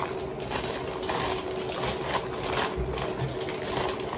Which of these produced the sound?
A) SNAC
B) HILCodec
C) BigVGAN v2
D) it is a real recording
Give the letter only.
D